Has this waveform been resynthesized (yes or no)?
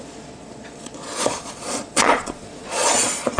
yes